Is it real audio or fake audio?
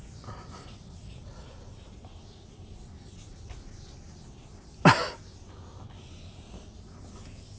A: real